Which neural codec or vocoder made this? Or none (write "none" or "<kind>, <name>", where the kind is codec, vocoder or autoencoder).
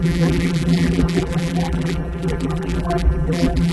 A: vocoder, BigVGAN v2